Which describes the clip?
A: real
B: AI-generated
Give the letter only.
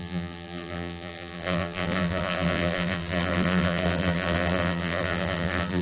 B